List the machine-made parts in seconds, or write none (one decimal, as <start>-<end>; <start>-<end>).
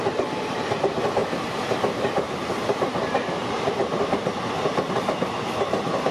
0.0-6.1